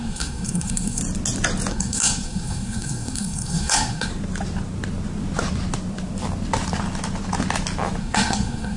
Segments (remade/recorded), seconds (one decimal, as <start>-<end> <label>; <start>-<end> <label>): 0.0-1.0 remade; 1.0-1.7 recorded; 1.7-4.1 remade; 4.1-8.0 recorded; 8.0-8.8 remade